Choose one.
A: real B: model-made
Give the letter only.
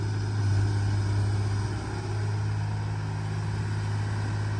A